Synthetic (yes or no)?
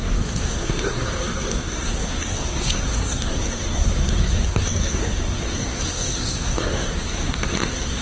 yes